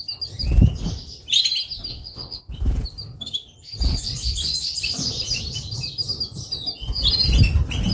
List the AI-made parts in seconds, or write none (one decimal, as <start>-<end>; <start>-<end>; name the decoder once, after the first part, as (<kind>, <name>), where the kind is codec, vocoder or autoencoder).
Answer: 1.9-2.4 (vocoder, WaveNeXt)